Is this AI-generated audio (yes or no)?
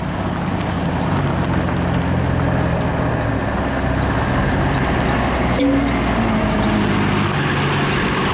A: no